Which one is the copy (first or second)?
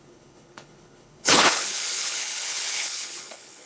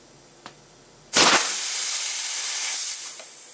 first